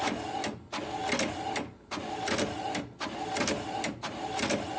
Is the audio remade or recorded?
recorded